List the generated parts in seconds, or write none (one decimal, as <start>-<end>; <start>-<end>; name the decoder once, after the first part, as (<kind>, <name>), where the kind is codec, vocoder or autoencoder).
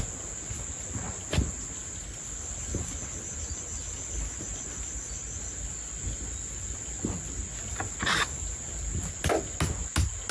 none